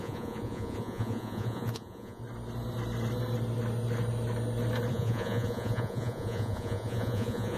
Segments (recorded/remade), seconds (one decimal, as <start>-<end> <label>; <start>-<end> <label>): 0.0-2.2 remade; 2.2-4.9 recorded; 4.9-7.6 remade